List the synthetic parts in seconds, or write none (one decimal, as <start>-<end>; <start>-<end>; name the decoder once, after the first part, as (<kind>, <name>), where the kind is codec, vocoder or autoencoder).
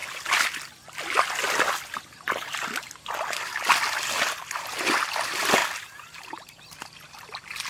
5.6-6.6 (vocoder, BigVGAN v2)